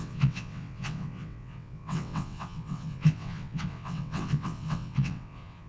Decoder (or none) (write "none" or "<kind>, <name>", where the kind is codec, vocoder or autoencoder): vocoder, WaveNeXt